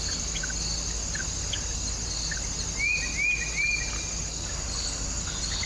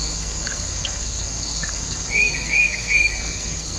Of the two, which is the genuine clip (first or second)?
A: first